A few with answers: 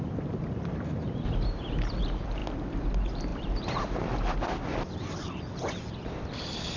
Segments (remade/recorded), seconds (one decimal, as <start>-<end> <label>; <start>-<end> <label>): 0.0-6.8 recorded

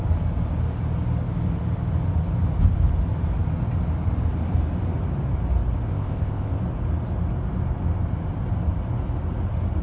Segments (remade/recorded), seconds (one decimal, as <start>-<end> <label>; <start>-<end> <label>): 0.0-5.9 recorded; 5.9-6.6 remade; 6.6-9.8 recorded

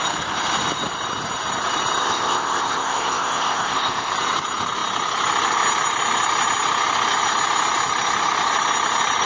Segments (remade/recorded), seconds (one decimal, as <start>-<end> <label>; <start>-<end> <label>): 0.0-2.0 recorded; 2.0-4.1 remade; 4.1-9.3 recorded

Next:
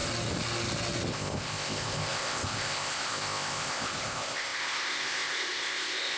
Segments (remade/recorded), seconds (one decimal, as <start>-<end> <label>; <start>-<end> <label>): 0.0-1.1 recorded; 1.1-6.2 remade

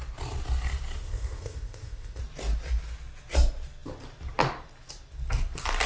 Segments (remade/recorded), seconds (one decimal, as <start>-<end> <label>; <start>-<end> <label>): 0.0-1.0 recorded; 1.0-2.2 remade; 2.2-5.9 recorded